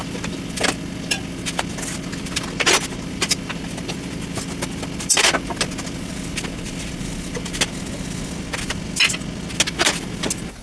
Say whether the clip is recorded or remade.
recorded